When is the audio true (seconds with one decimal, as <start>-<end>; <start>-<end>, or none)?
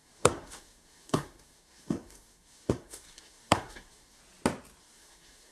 4.2-4.8